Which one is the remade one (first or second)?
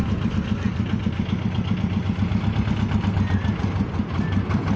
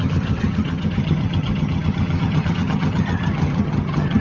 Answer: second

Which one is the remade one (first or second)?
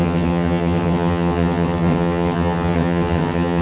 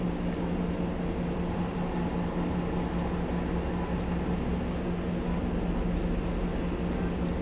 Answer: first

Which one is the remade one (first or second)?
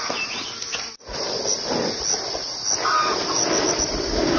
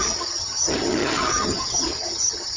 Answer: second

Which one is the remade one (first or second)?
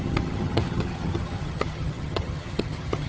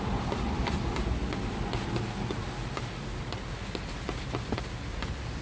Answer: first